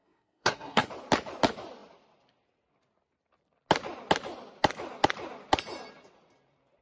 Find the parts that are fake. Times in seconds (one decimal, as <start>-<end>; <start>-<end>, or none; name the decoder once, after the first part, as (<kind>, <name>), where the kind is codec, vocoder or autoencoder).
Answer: 0.0-0.9 (codec, SNAC)